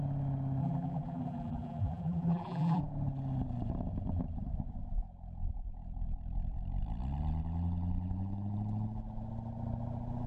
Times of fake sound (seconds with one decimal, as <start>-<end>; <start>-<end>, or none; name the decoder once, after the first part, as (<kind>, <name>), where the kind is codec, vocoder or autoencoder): 0.6-2.8 (vocoder, BigVGAN v2)

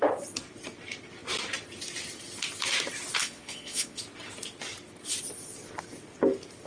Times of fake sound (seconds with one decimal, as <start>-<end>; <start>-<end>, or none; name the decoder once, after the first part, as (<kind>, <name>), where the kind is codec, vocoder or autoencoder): 3.2-4.0 (vocoder, Vocos)